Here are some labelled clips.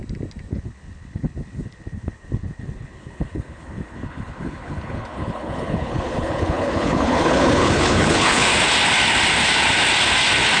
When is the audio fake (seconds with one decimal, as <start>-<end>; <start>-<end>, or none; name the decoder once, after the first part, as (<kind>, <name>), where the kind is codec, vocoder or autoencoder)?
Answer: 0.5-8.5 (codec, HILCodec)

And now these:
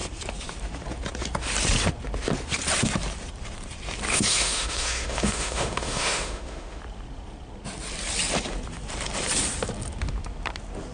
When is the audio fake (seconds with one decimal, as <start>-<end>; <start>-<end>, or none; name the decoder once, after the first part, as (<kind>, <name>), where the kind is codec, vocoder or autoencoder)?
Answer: 4.1-6.8 (autoencoder, DAC-VAE)

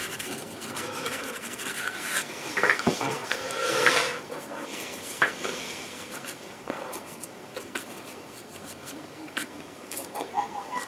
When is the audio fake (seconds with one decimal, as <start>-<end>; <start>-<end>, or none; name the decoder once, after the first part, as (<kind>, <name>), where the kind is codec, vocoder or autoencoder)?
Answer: 0.0-10.9 (codec, SNAC)